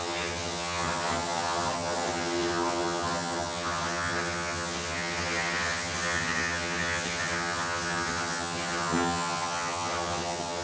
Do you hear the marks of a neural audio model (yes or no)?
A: yes